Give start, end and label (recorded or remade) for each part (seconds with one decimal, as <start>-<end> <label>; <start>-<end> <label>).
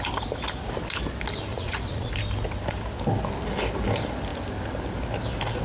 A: 0.0-1.5 recorded; 1.5-2.1 remade; 2.1-5.6 recorded